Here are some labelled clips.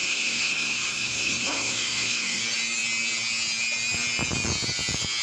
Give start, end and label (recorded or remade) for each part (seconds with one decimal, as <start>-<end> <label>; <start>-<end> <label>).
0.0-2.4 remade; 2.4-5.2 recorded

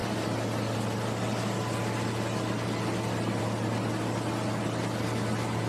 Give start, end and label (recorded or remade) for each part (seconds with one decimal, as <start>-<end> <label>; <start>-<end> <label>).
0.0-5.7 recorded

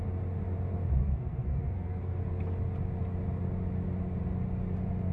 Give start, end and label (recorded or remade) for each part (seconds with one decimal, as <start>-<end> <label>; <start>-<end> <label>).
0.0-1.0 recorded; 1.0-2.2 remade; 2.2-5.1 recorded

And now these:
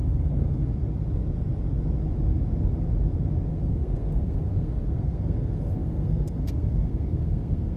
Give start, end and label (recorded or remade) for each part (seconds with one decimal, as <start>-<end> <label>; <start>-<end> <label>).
0.0-0.7 remade; 0.7-3.5 recorded; 3.5-7.8 remade

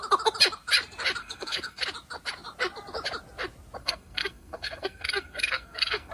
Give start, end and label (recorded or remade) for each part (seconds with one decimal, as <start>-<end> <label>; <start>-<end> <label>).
0.0-1.2 recorded; 1.2-1.8 remade; 1.8-3.8 recorded; 3.8-6.1 remade

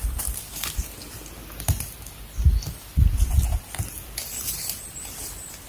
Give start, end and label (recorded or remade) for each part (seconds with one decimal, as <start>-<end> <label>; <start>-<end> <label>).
0.0-5.7 recorded